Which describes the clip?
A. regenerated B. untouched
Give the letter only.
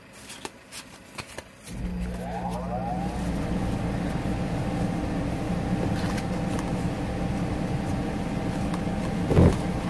B